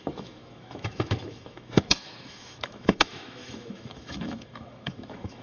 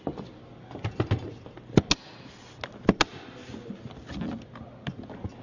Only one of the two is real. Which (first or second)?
second